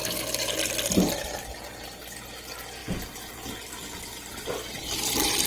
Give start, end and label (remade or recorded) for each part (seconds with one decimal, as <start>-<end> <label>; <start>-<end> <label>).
0.0-5.5 recorded